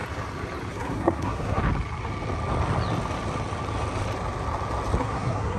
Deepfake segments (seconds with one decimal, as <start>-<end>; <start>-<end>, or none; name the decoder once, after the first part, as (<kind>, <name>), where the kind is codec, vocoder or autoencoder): 0.7-1.6 (codec, SNAC); 5.0-5.6